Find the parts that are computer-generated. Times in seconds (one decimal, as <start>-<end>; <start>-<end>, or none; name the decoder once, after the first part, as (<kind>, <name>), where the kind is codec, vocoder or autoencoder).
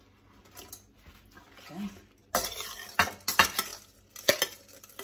2.2-2.9 (vocoder, BigVGAN v2)